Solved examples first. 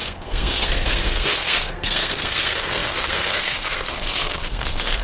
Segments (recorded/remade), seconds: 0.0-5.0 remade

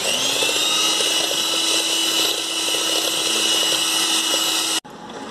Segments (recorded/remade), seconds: 0.0-5.3 recorded

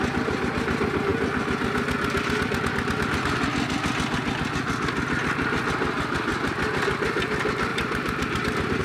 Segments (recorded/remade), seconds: 0.0-6.3 recorded; 6.3-6.8 remade; 6.8-7.7 recorded; 7.7-8.8 remade

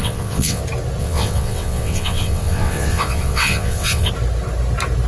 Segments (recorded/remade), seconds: 0.0-0.6 remade; 0.6-1.0 recorded; 1.0-4.1 remade; 4.1-5.1 recorded

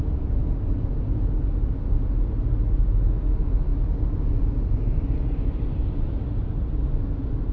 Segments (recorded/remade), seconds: 0.0-5.8 recorded; 5.8-6.9 remade; 6.9-7.5 recorded

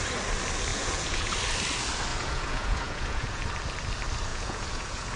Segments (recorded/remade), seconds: 0.0-0.7 recorded; 0.7-1.3 remade; 1.3-2.1 recorded; 2.1-3.5 remade; 3.5-4.3 recorded; 4.3-5.2 remade

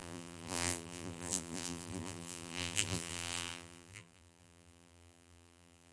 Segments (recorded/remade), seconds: 0.0-5.9 remade